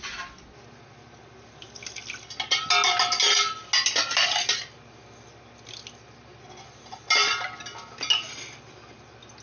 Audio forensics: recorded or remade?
recorded